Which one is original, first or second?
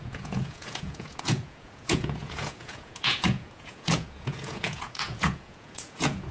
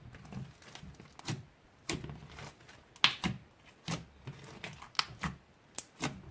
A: second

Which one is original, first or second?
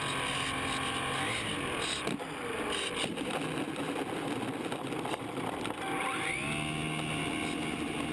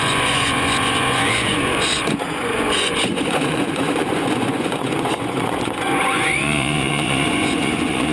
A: first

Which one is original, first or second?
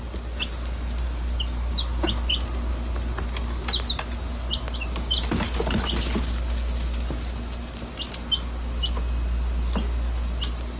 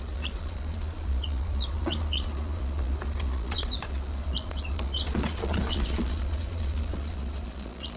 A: first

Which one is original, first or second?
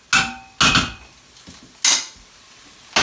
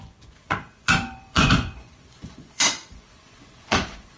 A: first